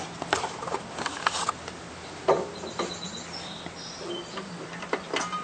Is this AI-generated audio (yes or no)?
no